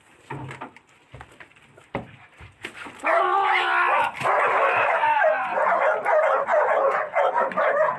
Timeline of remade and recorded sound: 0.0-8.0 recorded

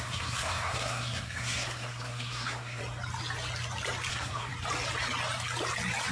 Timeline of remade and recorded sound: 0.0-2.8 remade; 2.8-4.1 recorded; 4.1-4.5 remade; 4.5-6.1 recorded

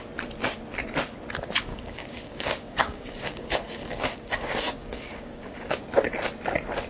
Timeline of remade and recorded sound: 0.0-1.7 recorded; 1.7-5.8 remade; 5.8-6.9 recorded